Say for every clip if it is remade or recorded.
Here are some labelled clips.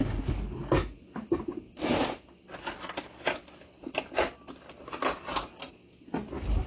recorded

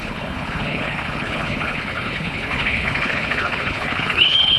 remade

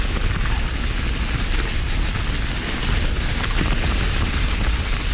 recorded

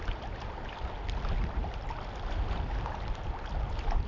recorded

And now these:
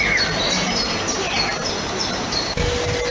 recorded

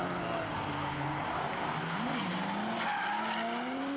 recorded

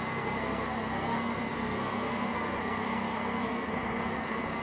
remade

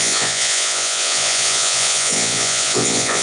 remade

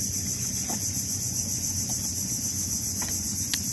remade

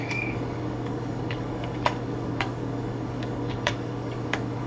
remade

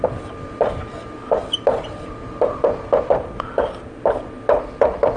recorded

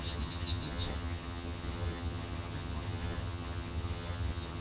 remade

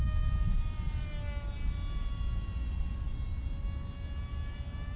recorded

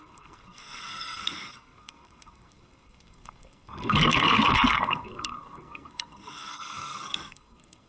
remade